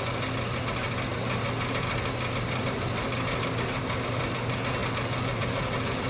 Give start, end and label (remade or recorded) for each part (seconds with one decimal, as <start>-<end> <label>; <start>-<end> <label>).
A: 0.0-6.1 recorded